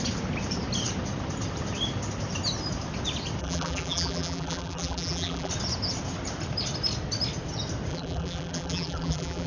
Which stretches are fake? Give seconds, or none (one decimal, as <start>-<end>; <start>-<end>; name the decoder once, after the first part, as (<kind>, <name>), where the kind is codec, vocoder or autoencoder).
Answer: 3.4-5.5 (vocoder, BigVGAN v2); 7.9-9.5

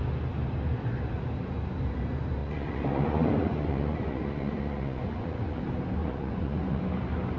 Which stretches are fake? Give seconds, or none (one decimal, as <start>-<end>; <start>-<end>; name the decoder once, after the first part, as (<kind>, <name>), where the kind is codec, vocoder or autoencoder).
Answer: 2.4-5.6 (vocoder, Vocos); 6.0-6.8

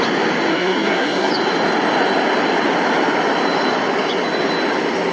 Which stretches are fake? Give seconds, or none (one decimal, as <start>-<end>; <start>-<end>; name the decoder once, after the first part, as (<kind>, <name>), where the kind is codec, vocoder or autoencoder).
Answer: 0.5-1.3 (codec, SNAC)

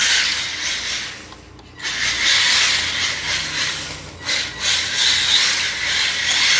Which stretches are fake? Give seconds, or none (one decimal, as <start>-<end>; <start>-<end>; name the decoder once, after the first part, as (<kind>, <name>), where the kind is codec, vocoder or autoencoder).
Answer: none

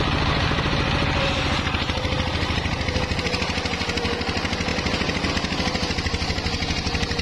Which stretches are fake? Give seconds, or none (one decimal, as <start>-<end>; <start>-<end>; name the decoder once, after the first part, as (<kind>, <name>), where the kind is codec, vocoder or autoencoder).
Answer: none